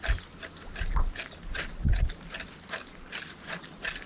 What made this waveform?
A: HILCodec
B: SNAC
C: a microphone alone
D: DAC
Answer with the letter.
C